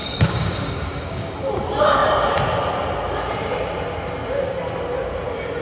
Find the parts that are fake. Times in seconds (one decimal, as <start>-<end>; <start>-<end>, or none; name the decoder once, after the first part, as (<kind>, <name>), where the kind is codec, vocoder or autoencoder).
0.0-1.3 (codec, DAC)